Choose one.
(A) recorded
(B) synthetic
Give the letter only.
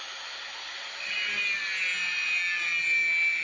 A